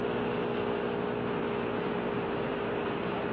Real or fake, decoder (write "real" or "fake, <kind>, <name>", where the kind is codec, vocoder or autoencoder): real